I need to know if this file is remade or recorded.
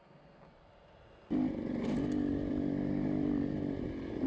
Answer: recorded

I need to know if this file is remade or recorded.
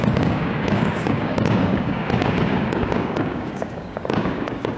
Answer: remade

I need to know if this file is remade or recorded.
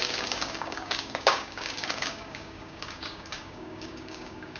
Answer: remade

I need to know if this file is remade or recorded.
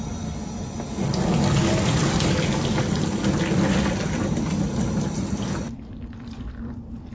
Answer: recorded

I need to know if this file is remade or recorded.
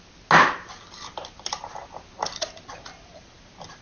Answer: recorded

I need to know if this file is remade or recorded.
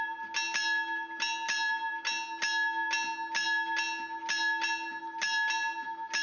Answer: recorded